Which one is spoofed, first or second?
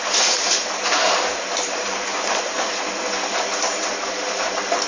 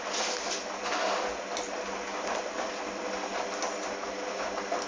first